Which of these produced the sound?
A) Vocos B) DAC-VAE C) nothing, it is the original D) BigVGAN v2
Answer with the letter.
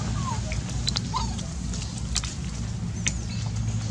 C